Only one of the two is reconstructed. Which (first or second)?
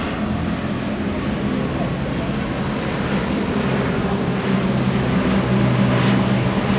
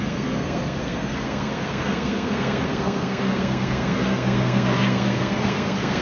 second